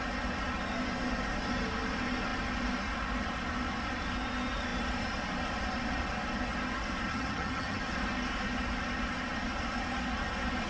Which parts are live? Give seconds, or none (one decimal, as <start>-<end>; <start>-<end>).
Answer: 0.0-7.1; 7.8-10.7